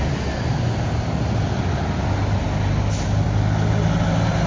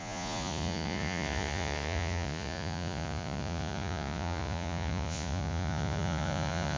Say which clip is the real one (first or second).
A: first